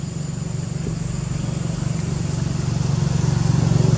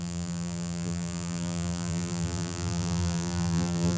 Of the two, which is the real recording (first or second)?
first